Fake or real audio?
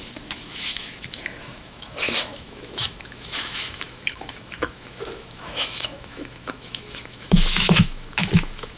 fake